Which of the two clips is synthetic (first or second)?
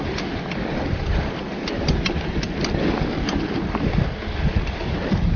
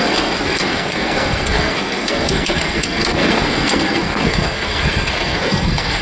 second